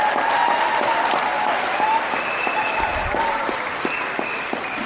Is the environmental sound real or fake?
real